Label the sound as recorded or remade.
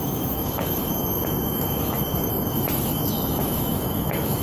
remade